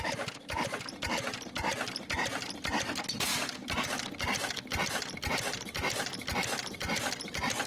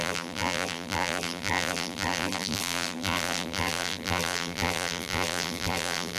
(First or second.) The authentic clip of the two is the first